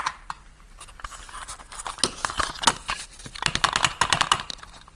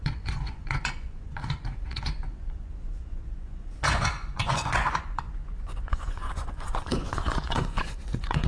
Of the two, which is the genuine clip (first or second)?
first